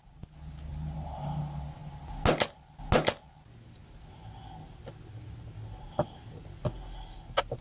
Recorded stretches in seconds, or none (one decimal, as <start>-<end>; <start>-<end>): 0.0-0.7; 1.4-7.6